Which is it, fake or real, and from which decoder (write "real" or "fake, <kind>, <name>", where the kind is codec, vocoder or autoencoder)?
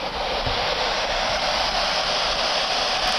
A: real